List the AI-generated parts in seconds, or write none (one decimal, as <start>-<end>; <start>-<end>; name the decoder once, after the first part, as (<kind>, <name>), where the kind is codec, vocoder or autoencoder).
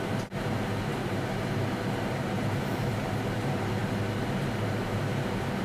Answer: 0.0-3.8 (vocoder, BigVGAN v2); 5.0-5.6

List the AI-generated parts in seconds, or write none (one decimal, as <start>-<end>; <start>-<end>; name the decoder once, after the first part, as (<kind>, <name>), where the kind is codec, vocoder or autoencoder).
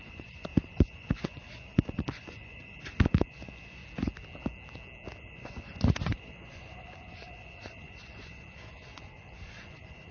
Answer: 0.0-3.8 (vocoder, Vocos); 5.2-10.1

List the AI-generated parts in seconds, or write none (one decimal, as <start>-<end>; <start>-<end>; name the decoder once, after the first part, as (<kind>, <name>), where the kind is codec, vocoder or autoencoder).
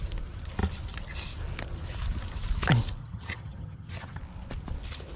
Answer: 3.0-4.2 (vocoder, HiFi-GAN)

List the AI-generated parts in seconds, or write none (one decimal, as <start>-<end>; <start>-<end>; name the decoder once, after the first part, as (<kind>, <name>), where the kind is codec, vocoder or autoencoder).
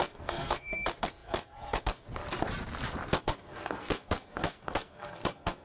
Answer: 0.0-2.2 (codec, SNAC); 3.2-5.6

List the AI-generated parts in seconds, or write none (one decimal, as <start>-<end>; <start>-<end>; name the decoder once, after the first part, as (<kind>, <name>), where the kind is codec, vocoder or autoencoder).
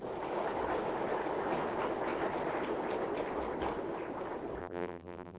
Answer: 4.6-5.4 (vocoder, BigVGAN v2)